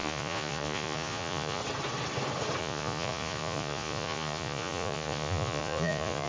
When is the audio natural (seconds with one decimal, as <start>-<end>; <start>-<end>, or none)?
1.6-2.6